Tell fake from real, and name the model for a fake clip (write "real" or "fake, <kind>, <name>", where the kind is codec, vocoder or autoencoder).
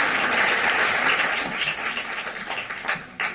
real